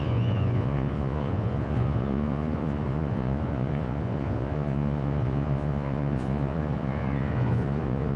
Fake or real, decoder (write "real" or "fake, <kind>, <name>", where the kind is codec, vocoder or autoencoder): fake, vocoder, Vocos